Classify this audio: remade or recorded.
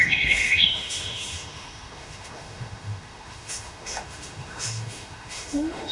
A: remade